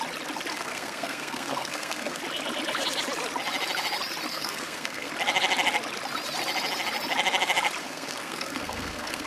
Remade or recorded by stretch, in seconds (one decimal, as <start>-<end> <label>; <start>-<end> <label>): 0.0-0.5 recorded; 0.5-2.2 remade; 2.2-4.3 recorded; 4.3-5.1 remade; 5.1-7.8 recorded; 7.8-9.3 remade